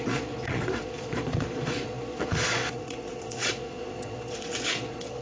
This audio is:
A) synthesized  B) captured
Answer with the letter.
A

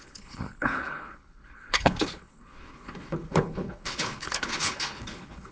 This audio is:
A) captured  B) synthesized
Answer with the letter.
B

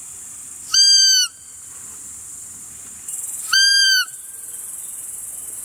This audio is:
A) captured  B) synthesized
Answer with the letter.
B